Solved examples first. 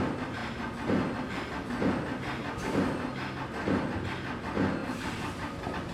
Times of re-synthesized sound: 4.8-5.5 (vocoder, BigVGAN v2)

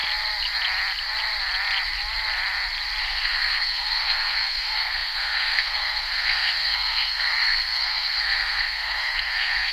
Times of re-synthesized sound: 3.0-9.7 (codec, SNAC)

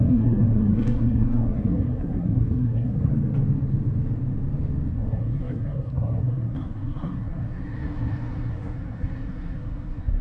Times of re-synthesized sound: 0.0-3.1 (codec, SNAC); 4.9-10.2

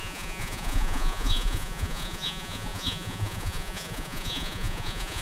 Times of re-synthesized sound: 0.0-5.2 (vocoder, Vocos)

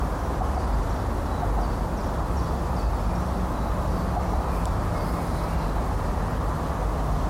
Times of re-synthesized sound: none

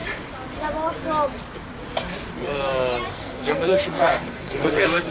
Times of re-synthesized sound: 3.1-5.1 (codec, SNAC)